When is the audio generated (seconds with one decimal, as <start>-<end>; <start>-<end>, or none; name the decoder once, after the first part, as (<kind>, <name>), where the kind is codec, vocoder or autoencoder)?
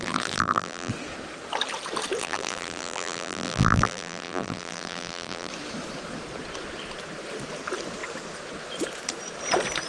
0.0-0.9 (vocoder, BigVGAN v2); 2.2-5.5